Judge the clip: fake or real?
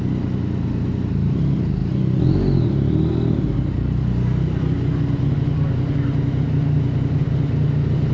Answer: real